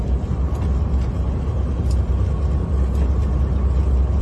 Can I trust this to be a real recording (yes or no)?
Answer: yes